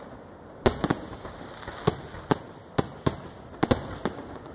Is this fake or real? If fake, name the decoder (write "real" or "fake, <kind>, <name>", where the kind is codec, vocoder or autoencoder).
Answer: real